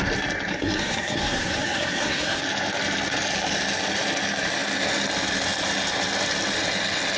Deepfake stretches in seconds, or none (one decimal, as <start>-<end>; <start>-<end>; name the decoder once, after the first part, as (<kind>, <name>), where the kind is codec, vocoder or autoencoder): 0.5-2.4 (codec, SNAC)